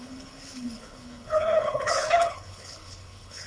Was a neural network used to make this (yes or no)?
yes